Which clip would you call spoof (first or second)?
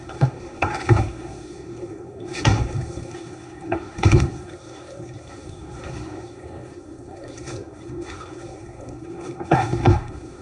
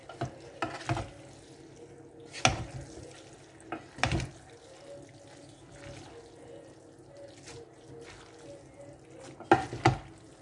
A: first